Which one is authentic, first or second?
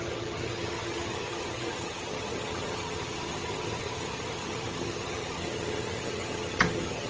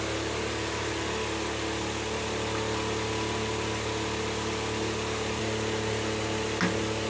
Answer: second